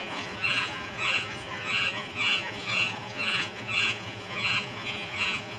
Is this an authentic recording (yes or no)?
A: no